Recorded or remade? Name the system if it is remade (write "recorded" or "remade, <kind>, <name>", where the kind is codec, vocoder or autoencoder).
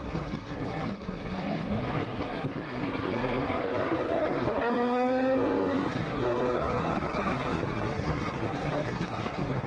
remade, codec, SNAC